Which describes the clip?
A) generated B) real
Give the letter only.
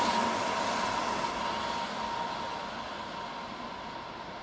B